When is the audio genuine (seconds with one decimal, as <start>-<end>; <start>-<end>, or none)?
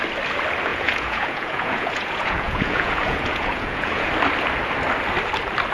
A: 0.0-0.7; 4.1-5.7